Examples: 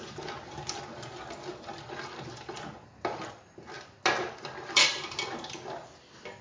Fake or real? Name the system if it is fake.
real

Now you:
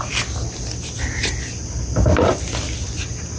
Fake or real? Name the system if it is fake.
real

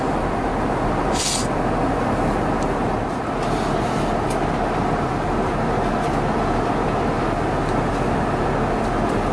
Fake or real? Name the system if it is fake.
real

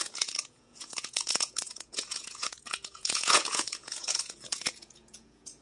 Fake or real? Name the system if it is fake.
fake, vocoder, Vocos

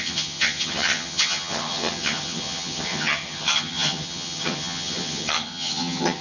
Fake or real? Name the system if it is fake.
fake, vocoder, HiFi-GAN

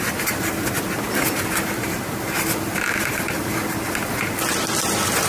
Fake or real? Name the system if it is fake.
real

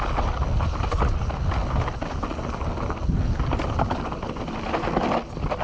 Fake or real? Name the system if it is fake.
real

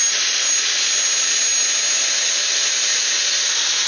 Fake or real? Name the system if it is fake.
real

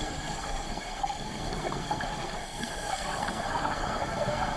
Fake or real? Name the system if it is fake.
fake, codec, SNAC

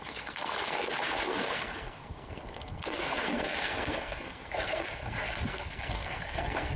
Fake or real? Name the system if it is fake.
fake, codec, SNAC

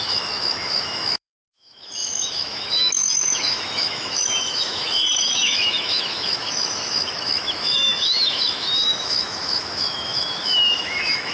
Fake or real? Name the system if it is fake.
fake, autoencoder, DAC-VAE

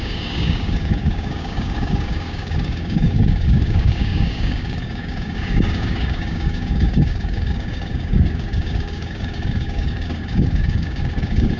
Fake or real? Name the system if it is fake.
fake, codec, DAC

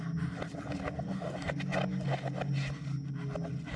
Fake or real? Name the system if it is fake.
real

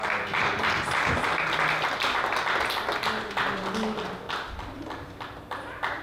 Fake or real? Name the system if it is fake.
real